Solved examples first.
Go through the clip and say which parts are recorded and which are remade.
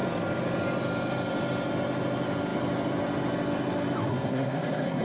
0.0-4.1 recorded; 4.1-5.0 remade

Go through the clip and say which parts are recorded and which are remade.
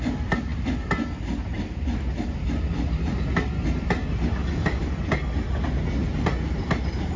0.0-7.2 recorded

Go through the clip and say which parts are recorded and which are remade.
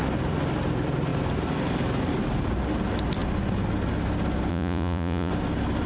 0.0-4.5 recorded; 4.5-5.3 remade; 5.3-5.9 recorded